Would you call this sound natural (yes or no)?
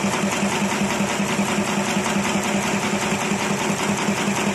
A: yes